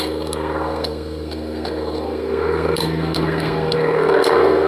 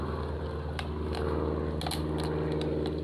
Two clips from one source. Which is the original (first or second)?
second